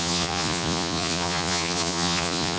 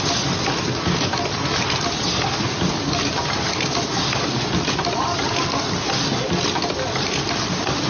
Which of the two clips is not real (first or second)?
first